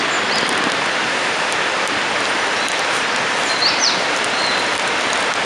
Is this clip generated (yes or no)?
no